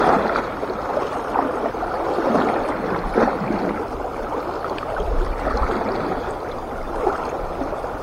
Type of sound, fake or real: real